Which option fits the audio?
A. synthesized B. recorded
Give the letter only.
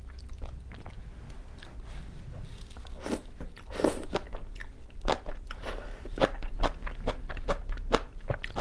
B